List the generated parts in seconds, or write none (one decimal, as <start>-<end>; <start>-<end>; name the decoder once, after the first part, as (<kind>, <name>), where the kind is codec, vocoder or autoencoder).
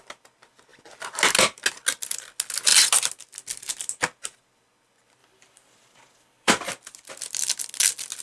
5.2-6.5 (vocoder, BigVGAN v2)